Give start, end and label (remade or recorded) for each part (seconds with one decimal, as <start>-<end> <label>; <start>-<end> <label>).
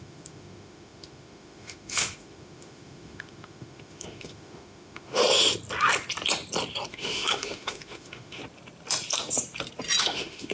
0.0-5.2 remade; 5.2-6.9 recorded; 6.9-8.4 remade; 8.4-10.0 recorded; 10.0-10.5 remade